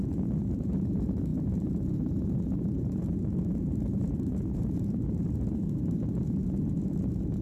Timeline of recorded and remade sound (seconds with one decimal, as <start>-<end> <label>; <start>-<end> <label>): 0.0-7.4 remade